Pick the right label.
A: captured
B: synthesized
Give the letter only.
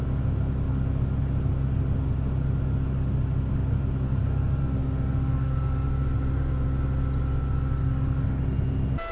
A